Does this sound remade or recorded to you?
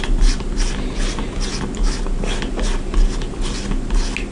recorded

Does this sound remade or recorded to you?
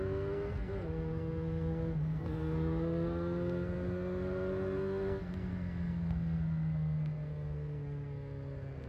remade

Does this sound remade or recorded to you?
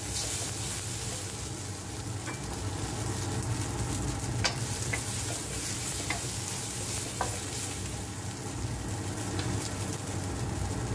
recorded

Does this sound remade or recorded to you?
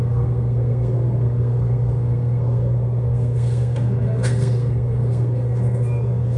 remade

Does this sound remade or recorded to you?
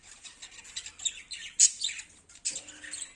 recorded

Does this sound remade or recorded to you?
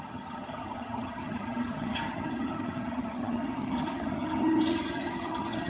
remade